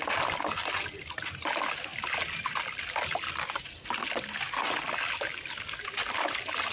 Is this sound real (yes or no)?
yes